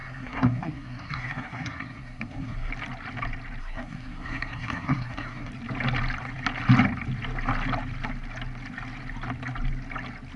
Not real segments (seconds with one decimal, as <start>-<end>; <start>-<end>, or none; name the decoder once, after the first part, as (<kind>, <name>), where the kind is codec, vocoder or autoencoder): 0.0-2.7 (codec, SNAC); 3.6-5.5